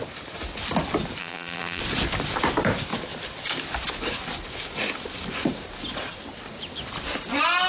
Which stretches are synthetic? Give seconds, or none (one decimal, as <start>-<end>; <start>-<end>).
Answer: 1.2-1.8